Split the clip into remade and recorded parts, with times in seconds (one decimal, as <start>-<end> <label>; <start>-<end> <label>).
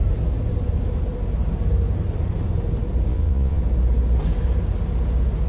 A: 0.0-3.1 recorded; 3.1-3.6 remade; 3.6-5.5 recorded